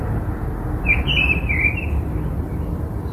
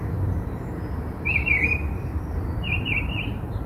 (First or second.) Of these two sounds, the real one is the first